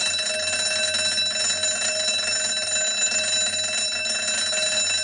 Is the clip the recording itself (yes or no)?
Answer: yes